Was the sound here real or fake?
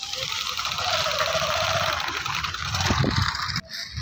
real